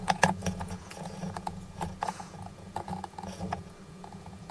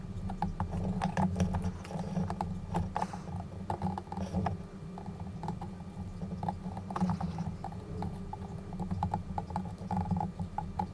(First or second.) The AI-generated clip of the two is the first